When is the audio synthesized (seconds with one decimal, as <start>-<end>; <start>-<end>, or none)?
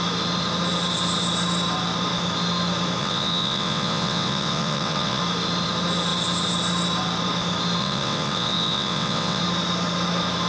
3.0-5.2; 7.8-9.4